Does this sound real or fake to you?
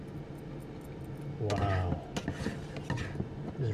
real